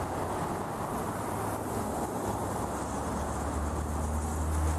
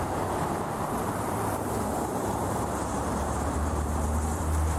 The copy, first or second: second